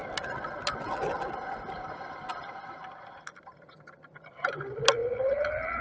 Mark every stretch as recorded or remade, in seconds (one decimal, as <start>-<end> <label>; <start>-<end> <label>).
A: 0.0-5.0 recorded; 5.0-5.8 remade